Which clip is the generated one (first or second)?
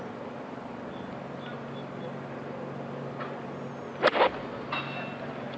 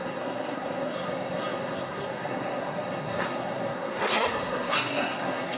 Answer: second